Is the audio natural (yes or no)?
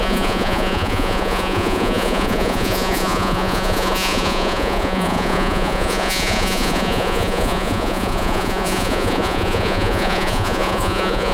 no